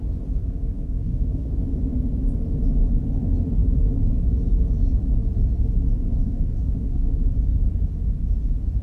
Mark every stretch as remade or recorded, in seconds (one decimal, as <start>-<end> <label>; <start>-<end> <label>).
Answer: 0.0-0.4 recorded; 0.4-1.5 remade; 1.5-6.2 recorded; 6.2-7.2 remade; 7.2-8.8 recorded